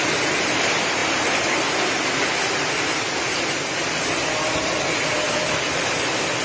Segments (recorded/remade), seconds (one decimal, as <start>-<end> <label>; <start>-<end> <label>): 0.0-6.4 recorded